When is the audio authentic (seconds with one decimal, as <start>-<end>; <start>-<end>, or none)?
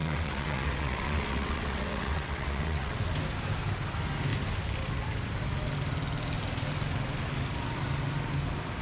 3.0-8.8